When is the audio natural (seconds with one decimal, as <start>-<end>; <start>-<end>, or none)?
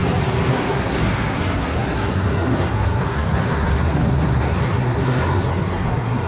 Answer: 0.0-0.5